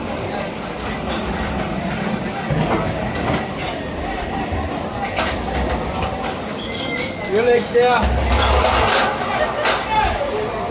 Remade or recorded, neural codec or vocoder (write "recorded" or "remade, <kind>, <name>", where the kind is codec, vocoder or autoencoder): recorded